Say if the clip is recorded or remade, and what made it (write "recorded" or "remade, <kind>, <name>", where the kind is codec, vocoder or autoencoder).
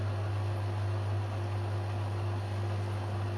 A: recorded